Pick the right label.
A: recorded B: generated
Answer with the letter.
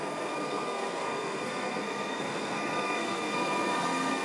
B